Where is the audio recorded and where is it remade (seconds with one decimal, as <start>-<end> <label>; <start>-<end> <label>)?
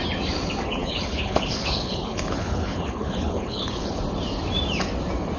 0.0-0.8 recorded; 0.8-4.0 remade; 4.0-5.4 recorded